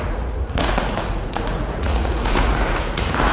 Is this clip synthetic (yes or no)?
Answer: yes